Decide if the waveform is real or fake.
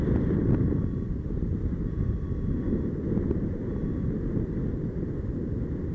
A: real